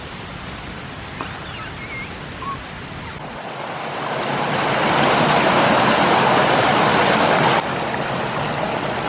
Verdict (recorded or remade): recorded